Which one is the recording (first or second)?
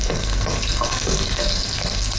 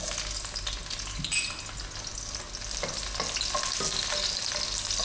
second